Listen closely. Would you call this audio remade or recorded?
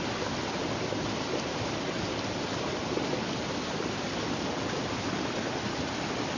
recorded